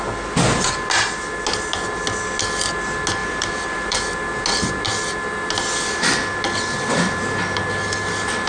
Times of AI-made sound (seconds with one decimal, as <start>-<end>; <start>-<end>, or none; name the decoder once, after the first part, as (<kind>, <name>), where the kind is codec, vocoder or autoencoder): 3.2-4.0 (vocoder, BigVGAN v2)